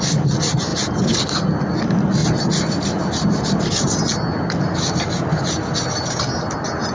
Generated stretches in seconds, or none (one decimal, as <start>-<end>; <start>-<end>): none